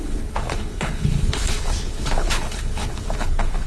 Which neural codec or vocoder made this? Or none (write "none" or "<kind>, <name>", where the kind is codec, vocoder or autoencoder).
codec, HILCodec